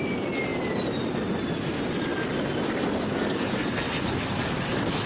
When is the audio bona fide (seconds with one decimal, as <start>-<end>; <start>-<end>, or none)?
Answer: 0.0-5.1